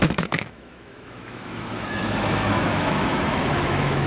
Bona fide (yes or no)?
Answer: no